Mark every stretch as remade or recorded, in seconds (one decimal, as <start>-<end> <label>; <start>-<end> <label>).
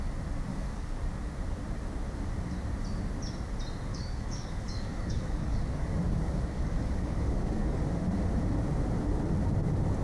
0.0-0.5 recorded; 0.5-1.0 remade; 1.0-3.9 recorded; 3.9-7.8 remade; 7.8-10.0 recorded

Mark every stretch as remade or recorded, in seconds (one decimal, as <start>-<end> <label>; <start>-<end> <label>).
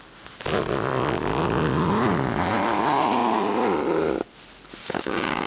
0.0-4.8 recorded; 4.8-5.5 remade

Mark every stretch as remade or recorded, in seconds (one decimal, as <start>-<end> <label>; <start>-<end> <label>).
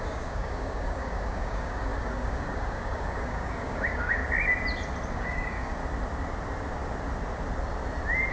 0.0-4.2 remade; 4.2-5.1 recorded; 5.1-5.8 remade; 5.8-8.3 recorded